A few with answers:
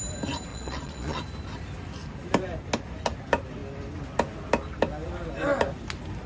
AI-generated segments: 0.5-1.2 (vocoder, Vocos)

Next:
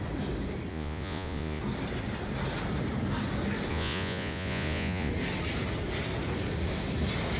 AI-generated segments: 0.7-1.6 (vocoder, Vocos); 3.7-5.1

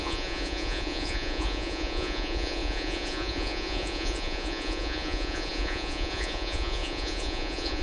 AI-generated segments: 0.0-7.8 (vocoder, Vocos)

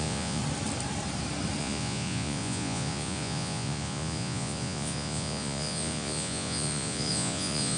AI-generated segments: 0.0-0.4 (vocoder, Vocos); 1.6-7.8

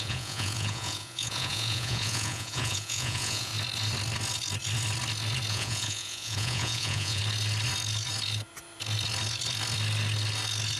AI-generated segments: 0.0-3.5 (vocoder, Vocos); 5.5-7.2